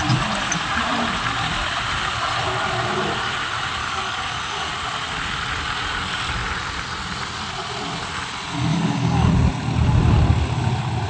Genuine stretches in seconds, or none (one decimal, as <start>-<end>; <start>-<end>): 0.0-3.8; 4.7-8.7; 9.3-11.1